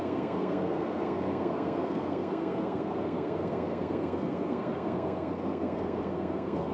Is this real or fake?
fake